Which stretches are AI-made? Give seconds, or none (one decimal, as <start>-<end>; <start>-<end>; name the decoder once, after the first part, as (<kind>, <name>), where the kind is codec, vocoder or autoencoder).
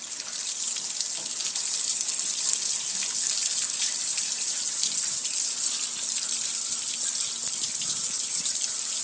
none